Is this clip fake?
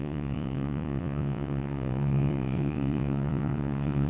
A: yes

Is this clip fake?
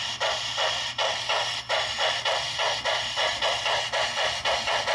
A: no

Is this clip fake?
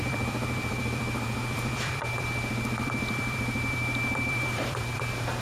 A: yes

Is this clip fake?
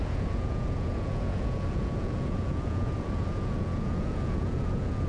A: yes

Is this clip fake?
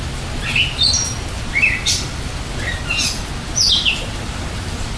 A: no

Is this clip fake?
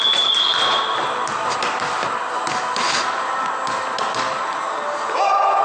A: no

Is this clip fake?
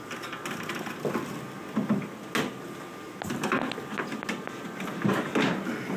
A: no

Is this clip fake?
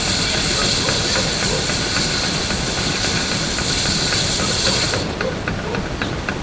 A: no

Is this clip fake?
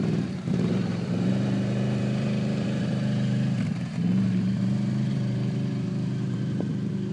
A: yes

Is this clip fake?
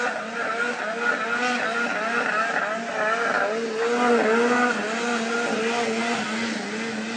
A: no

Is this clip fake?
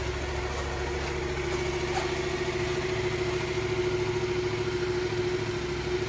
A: no